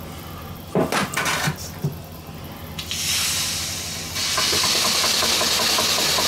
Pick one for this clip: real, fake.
real